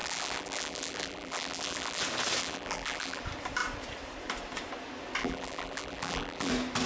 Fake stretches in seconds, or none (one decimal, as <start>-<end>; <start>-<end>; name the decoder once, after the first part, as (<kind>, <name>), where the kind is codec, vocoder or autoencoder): 0.0-2.0 (vocoder, BigVGAN v2); 2.4-3.2; 5.2-6.5